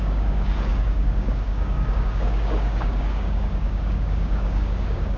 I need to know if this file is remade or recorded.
remade